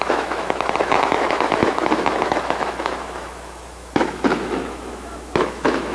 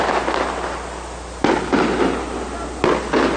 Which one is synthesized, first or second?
first